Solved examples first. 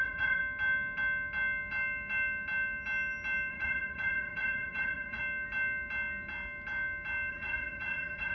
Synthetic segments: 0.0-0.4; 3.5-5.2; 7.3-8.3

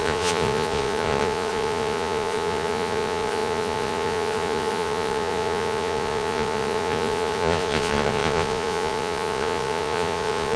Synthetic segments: 0.0-10.6

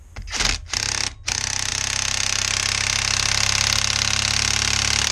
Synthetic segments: none

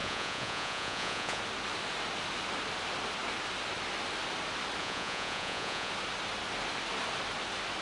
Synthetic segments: 0.0-1.4; 4.8-5.9